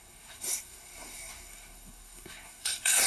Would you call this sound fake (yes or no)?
yes